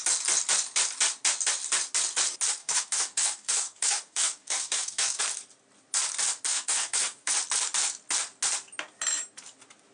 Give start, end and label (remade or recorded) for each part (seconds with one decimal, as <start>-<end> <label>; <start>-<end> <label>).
0.0-2.6 recorded; 2.6-5.2 remade; 5.2-6.5 recorded; 6.5-7.3 remade; 7.3-9.9 recorded